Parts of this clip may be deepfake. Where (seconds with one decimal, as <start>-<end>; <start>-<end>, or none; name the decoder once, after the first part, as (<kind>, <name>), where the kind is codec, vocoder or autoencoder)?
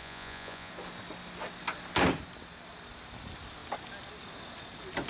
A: 0.0-0.7 (vocoder, Vocos)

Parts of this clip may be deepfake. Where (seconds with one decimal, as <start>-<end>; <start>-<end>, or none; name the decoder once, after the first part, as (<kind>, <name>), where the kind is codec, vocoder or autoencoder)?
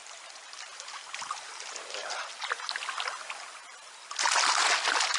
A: 0.0-2.3 (vocoder, BigVGAN v2)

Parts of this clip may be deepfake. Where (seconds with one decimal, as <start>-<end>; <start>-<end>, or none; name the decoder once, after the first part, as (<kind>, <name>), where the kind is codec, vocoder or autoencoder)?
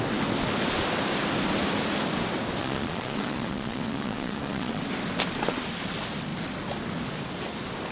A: 2.6-4.8 (vocoder, Vocos)